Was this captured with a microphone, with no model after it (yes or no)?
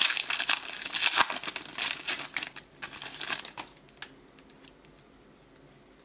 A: yes